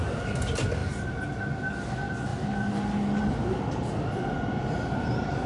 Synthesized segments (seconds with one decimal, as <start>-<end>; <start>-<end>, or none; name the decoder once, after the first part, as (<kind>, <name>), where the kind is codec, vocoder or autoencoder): none